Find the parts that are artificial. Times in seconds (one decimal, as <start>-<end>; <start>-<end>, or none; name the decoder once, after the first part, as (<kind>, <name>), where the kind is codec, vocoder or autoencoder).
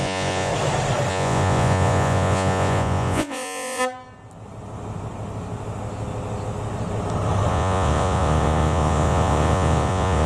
0.0-0.5 (vocoder, Vocos); 1.1-3.8; 7.5-10.3